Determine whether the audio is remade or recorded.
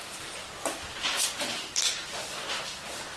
recorded